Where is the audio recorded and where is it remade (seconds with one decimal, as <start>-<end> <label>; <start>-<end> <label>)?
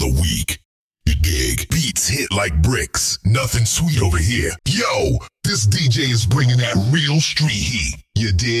0.0-0.8 recorded; 0.8-1.4 remade; 1.4-3.4 recorded; 3.4-4.5 remade; 4.5-6.2 recorded; 6.2-7.7 remade; 7.7-8.6 recorded